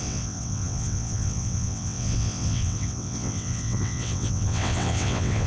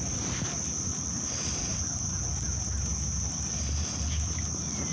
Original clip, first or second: second